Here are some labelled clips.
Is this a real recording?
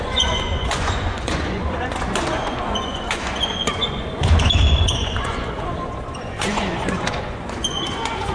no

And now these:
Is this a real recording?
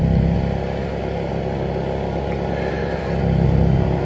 yes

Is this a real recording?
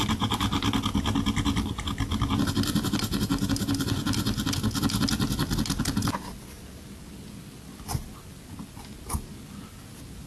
yes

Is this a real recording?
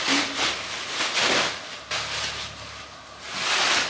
yes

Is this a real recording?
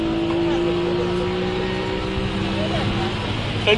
yes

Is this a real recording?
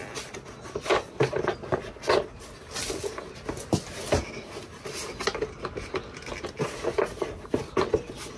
yes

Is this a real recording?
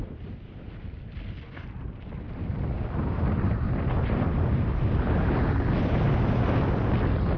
yes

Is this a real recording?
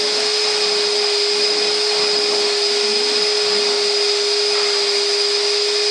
yes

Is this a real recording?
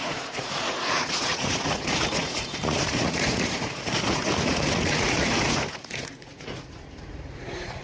no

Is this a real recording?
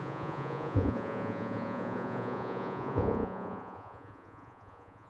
no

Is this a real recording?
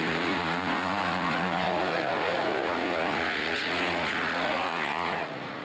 no